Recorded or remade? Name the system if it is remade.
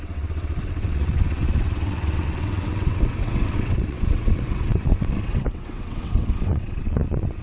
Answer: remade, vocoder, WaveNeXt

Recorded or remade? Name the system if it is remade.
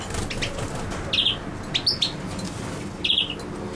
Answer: recorded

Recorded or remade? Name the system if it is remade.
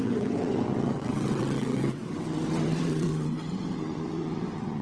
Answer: remade, vocoder, WaveNeXt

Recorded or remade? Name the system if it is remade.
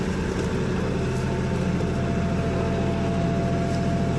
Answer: recorded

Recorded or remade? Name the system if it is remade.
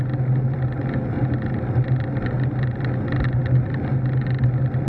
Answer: recorded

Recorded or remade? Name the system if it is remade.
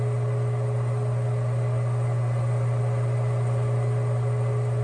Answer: recorded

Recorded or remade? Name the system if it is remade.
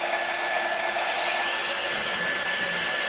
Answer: recorded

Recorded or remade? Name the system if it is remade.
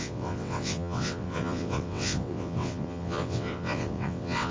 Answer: remade, vocoder, WaveNeXt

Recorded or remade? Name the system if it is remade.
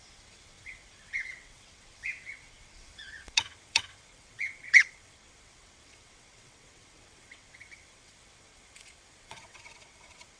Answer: remade, vocoder, WaveNeXt